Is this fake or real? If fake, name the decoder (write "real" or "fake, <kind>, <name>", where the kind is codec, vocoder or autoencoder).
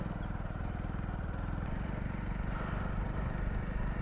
real